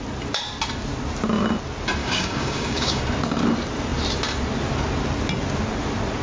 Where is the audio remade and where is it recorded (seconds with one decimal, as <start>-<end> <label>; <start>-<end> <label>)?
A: 0.0-2.0 recorded; 2.0-3.0 remade; 3.0-6.2 recorded